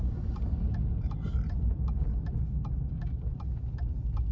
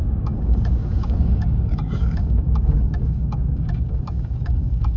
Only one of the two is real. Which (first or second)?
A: first